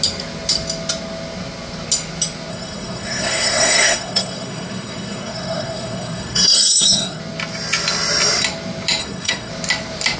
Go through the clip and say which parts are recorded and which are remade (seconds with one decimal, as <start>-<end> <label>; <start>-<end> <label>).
0.0-2.5 recorded; 2.5-7.2 remade; 7.2-9.0 recorded; 9.0-9.5 remade; 9.5-10.2 recorded